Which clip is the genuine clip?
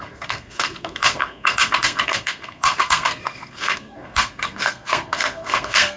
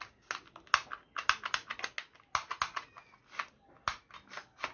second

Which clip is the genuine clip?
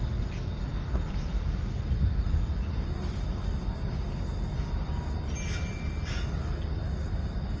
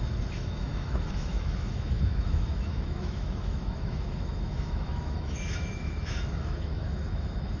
first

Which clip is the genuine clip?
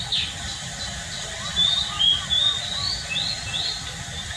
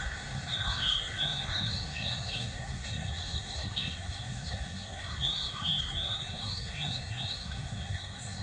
first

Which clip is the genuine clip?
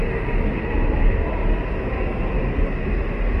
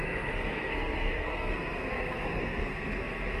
first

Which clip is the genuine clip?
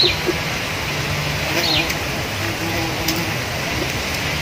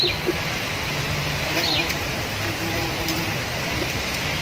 first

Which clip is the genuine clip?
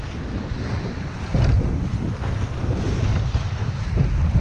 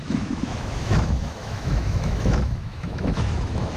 first